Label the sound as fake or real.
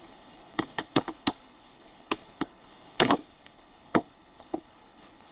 fake